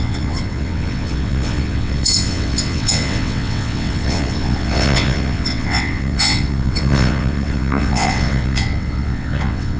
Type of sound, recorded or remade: remade